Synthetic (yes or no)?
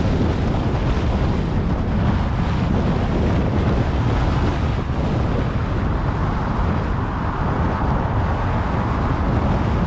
no